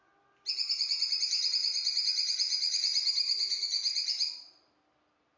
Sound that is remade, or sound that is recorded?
recorded